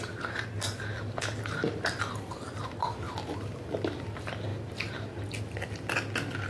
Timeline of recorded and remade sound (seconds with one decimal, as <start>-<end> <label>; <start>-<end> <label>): 0.0-0.9 recorded; 0.9-2.3 remade; 2.3-6.5 recorded